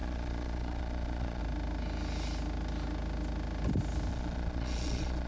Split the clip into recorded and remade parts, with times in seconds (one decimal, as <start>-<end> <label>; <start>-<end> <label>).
0.0-1.4 remade; 1.4-4.1 recorded; 4.1-5.3 remade